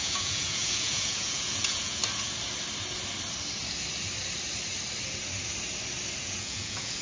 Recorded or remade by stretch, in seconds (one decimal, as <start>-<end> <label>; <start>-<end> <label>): 0.0-2.0 remade; 2.0-6.2 recorded; 6.2-7.0 remade